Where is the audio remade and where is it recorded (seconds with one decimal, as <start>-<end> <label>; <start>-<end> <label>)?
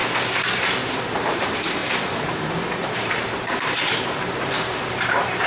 0.0-0.8 recorded; 0.8-5.5 remade